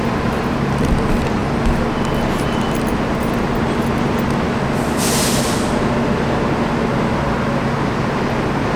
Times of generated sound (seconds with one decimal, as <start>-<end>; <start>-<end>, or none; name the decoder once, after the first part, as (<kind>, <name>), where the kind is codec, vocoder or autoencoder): none